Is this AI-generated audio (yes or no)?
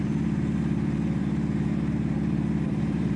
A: yes